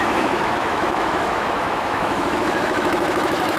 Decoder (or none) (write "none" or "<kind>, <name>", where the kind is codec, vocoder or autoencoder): autoencoder, DAC-VAE